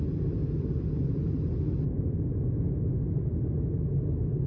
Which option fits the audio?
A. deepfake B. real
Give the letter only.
B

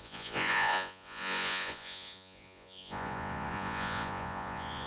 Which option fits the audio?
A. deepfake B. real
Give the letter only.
A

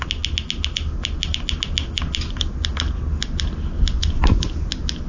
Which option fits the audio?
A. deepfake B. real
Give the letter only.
B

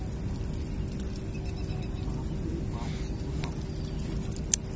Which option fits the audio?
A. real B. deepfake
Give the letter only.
A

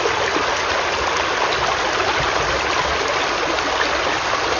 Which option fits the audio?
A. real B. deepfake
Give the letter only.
A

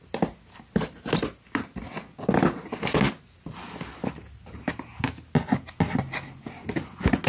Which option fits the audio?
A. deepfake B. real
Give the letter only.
B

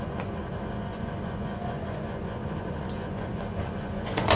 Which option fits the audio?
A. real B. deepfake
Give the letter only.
B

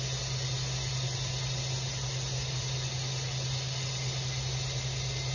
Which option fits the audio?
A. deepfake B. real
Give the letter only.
B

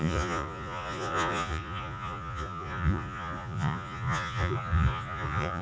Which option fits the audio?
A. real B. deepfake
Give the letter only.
B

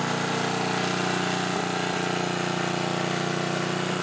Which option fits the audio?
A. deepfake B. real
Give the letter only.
B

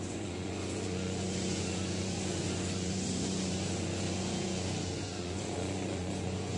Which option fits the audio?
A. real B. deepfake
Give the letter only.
B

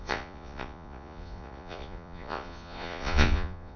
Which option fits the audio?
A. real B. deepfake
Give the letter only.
B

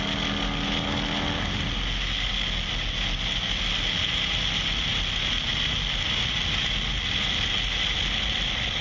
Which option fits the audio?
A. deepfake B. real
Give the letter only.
B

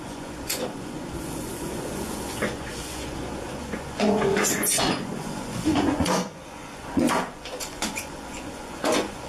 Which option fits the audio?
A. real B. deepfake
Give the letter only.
B